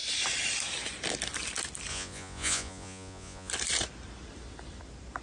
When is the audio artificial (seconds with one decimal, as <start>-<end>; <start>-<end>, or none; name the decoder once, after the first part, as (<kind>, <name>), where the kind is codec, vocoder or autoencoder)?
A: 1.9-3.5 (vocoder, Vocos)